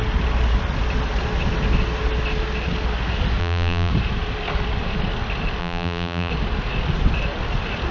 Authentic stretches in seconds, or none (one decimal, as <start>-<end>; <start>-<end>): 0.0-3.4; 3.9-5.6; 6.3-7.9